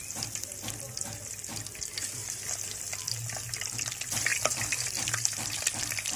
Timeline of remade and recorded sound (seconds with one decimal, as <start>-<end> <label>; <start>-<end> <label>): 0.0-2.2 recorded; 2.2-2.9 remade; 2.9-4.3 recorded; 4.3-5.6 remade; 5.6-6.2 recorded